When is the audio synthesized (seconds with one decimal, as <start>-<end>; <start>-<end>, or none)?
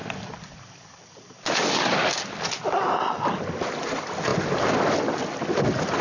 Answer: none